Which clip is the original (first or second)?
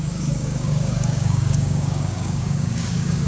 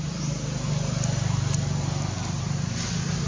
second